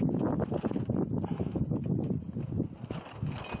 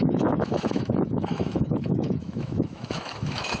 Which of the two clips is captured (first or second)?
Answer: first